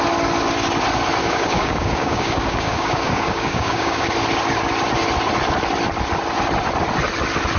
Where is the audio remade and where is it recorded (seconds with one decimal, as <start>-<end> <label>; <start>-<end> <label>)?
0.0-1.2 recorded; 1.2-4.1 remade; 4.1-7.6 recorded